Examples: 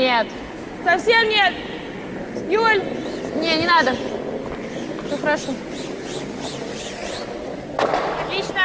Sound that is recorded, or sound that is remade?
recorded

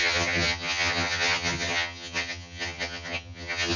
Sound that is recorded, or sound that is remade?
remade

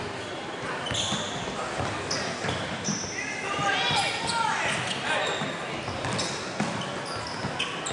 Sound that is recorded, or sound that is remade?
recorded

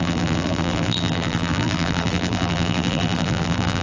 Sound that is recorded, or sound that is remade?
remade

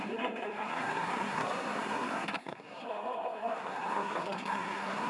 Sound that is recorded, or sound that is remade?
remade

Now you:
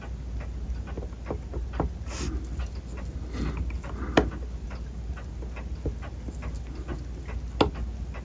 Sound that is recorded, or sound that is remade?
recorded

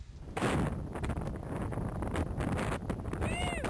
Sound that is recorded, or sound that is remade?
recorded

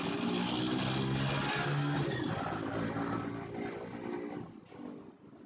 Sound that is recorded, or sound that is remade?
recorded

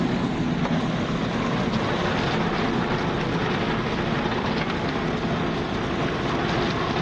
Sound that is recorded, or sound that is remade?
recorded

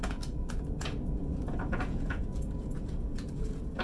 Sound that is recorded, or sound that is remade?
remade